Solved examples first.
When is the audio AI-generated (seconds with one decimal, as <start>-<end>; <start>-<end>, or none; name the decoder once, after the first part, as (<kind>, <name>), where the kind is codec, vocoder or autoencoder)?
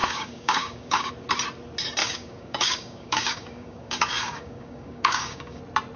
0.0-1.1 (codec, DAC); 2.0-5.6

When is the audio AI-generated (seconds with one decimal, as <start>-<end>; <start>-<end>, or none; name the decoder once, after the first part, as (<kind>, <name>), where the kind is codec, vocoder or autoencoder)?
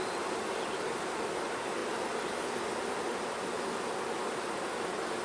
none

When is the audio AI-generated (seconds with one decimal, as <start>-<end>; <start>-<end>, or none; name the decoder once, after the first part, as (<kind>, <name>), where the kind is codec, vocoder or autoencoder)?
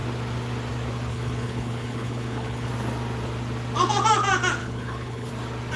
1.1-2.7 (codec, HILCodec); 4.6-5.3